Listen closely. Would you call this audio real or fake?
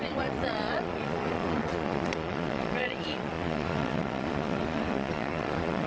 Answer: fake